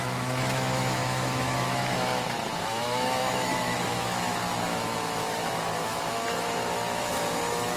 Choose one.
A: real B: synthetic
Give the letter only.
B